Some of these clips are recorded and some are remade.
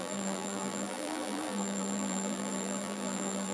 remade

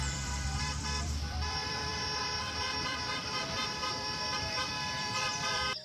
remade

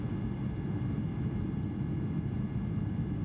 recorded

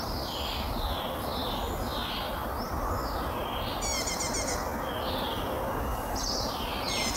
recorded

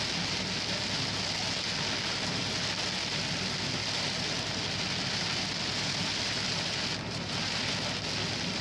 recorded